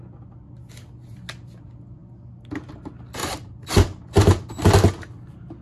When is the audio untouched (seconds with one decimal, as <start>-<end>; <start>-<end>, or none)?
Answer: 0.0-5.6